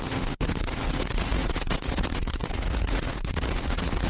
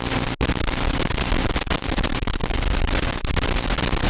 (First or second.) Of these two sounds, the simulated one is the first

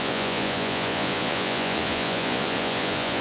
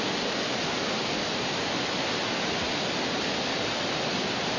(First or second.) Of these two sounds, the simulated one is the first